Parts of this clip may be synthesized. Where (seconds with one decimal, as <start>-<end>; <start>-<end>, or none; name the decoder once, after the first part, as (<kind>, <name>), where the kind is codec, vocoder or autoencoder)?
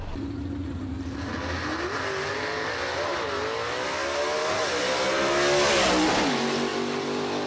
none